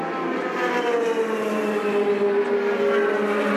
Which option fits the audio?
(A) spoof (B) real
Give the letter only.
B